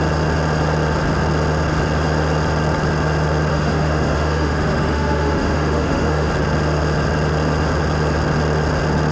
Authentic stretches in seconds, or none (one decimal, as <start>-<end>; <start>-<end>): 0.0-3.5; 6.3-9.1